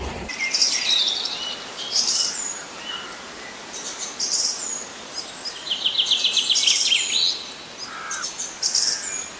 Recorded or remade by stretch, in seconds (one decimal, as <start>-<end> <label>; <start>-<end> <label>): 0.0-0.6 recorded; 0.6-5.4 remade; 5.4-9.4 recorded